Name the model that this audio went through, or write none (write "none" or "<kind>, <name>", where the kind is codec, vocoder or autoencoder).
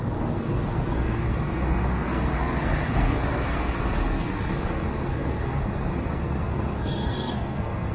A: codec, SNAC